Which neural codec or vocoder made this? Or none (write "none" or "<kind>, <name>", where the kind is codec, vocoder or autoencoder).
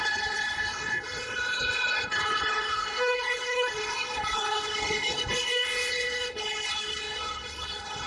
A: codec, HILCodec